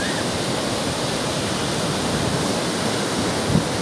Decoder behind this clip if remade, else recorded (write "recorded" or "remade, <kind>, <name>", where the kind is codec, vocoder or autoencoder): recorded